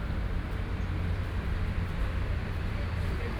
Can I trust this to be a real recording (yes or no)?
no